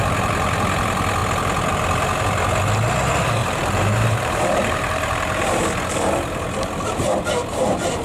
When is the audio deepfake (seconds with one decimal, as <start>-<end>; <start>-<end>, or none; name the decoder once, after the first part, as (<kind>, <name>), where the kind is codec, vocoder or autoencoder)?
3.4-5.6 (vocoder, BigVGAN v2)